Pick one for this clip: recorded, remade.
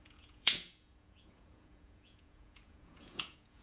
remade